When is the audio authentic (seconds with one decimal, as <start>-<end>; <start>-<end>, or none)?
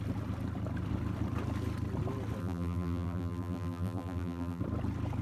0.0-2.4; 4.6-5.2